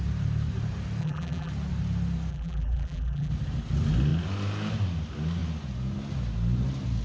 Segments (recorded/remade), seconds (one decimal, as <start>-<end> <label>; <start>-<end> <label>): 0.0-1.0 recorded; 1.0-1.5 remade; 1.5-2.3 recorded; 2.3-3.3 remade; 3.3-7.0 recorded

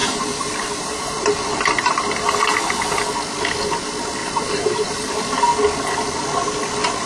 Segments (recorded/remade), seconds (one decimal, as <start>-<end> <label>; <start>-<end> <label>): 0.0-1.3 remade; 1.3-4.2 recorded; 4.2-5.1 remade; 5.1-7.1 recorded